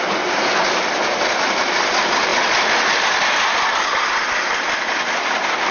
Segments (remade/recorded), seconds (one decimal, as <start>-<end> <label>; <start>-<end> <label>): 0.0-5.7 recorded